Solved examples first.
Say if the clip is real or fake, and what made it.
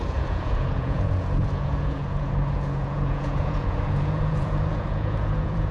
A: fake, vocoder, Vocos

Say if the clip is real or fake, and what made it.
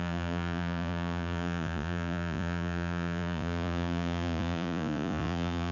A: fake, vocoder, Vocos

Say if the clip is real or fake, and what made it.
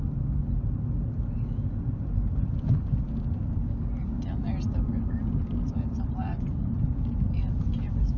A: real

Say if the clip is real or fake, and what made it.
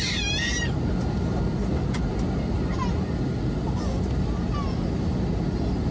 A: real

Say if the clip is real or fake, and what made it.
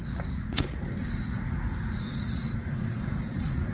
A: fake, vocoder, Vocos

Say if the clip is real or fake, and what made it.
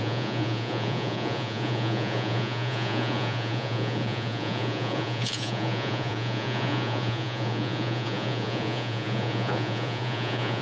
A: fake, vocoder, Vocos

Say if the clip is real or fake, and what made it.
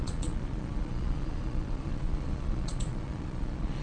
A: fake, vocoder, Vocos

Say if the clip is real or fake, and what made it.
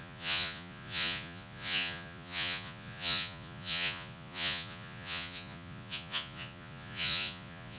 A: fake, vocoder, Vocos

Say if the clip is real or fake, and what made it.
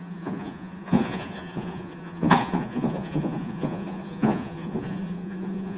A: fake, vocoder, Vocos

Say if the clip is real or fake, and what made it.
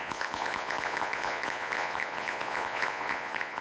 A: fake, vocoder, Vocos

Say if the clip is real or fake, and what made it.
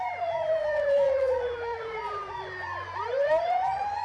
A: fake, vocoder, Vocos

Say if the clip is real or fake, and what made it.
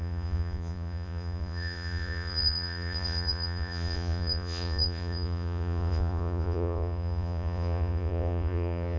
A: fake, vocoder, Vocos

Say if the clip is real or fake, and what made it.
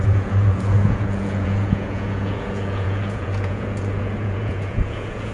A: fake, vocoder, Vocos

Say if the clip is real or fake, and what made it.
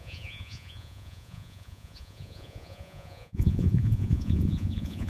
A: fake, vocoder, Vocos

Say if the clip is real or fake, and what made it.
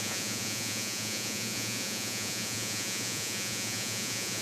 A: fake, vocoder, Vocos